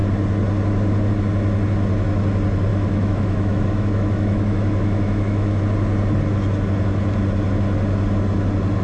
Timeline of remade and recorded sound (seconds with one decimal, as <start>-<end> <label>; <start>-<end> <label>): 0.0-2.7 recorded; 2.7-5.6 remade; 5.6-8.8 recorded

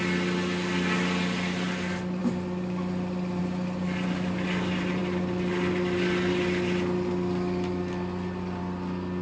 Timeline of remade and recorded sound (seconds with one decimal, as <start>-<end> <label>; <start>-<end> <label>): 0.0-9.2 recorded

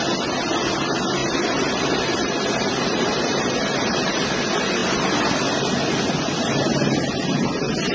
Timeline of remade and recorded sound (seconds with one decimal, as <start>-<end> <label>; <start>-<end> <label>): 0.0-7.9 recorded